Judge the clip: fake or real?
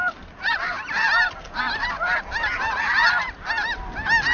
real